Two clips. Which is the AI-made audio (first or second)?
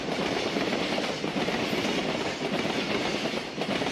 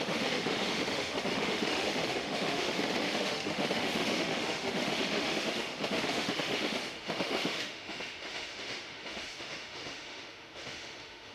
second